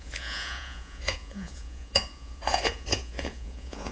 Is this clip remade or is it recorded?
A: remade